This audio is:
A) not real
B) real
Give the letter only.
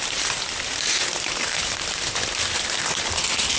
B